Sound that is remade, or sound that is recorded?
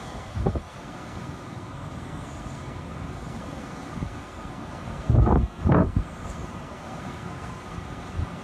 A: remade